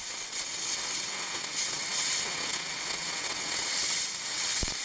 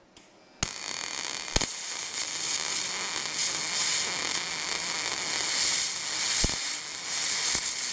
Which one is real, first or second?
second